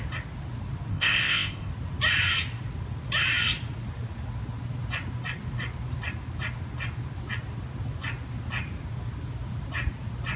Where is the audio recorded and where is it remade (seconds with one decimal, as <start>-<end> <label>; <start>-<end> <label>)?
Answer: 0.0-0.9 recorded; 0.9-1.7 remade; 1.7-10.4 recorded

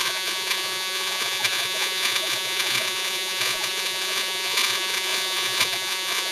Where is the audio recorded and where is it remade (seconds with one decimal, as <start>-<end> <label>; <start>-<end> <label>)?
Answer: 0.0-6.3 remade

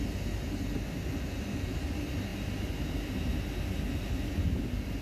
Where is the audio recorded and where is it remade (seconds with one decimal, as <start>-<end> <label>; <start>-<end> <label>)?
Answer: 0.0-5.0 recorded

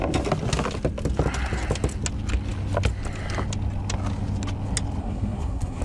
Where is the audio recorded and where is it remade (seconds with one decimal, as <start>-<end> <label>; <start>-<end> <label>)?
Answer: 0.0-5.0 recorded; 5.0-5.8 remade

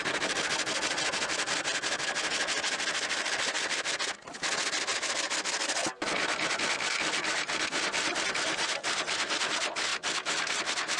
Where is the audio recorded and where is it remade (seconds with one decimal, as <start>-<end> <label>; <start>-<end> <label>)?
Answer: 0.0-11.0 recorded